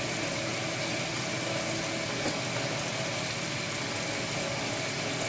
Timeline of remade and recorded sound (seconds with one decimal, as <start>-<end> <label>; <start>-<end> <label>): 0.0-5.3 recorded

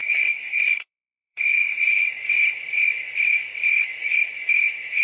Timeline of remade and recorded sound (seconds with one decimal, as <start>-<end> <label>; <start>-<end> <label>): 0.0-2.1 remade; 2.1-5.0 recorded

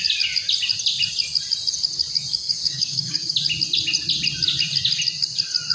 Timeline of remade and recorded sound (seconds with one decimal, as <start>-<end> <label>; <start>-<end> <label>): 0.0-2.3 recorded; 2.3-3.3 remade; 3.3-5.7 recorded

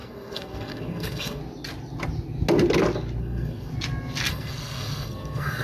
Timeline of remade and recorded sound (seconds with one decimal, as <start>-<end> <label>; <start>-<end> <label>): 0.0-1.4 remade; 1.4-3.2 recorded; 3.2-3.7 remade; 3.7-4.3 recorded; 4.3-5.6 remade